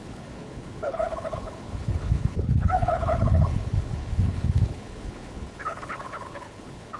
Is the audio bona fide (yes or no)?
no